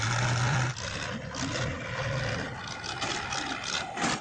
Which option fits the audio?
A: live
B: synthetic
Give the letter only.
A